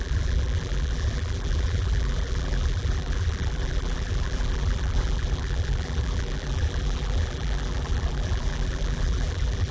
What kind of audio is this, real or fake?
fake